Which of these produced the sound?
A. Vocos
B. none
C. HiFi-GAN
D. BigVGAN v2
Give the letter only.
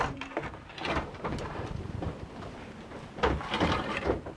D